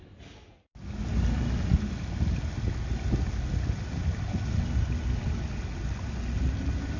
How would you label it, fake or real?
real